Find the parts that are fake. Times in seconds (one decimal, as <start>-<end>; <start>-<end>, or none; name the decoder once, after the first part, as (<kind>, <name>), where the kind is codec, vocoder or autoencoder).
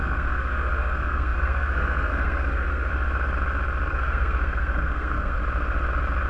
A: 0.0-2.9 (codec, SNAC); 3.9-5.4